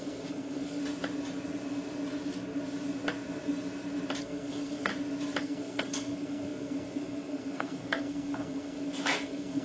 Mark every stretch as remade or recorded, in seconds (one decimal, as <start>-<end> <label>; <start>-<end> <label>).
0.0-0.8 remade; 0.8-4.2 recorded; 4.2-4.9 remade; 4.9-5.4 recorded; 5.4-9.6 remade

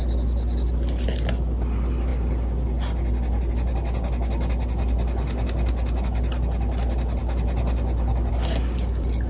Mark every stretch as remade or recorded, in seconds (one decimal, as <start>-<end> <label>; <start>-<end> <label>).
0.0-9.3 recorded

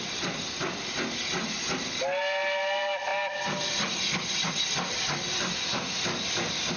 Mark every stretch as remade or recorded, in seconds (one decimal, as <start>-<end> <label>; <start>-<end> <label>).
0.0-6.8 recorded